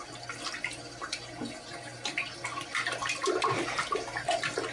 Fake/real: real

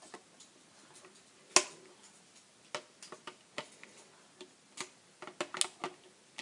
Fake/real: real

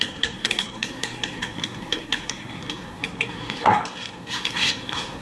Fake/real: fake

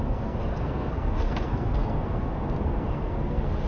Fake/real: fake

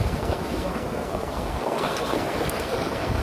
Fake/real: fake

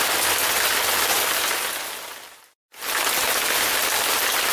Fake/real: real